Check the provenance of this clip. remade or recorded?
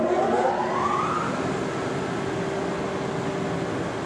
recorded